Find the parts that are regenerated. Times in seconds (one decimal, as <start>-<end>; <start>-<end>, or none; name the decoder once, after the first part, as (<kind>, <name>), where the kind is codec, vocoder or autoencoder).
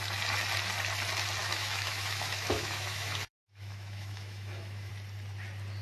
1.4-4.9 (autoencoder, DAC-VAE)